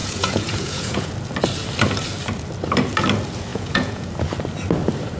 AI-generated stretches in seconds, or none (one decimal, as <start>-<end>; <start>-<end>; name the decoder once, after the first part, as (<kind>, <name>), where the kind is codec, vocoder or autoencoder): 0.0-1.1 (vocoder, Vocos); 3.5-4.1